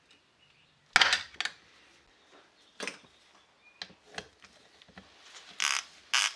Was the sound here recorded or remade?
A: recorded